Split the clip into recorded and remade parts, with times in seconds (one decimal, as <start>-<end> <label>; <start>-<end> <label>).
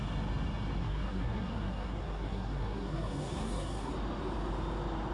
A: 0.0-0.8 recorded; 0.8-3.9 remade; 3.9-5.1 recorded